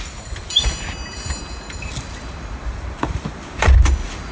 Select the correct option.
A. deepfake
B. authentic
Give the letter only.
A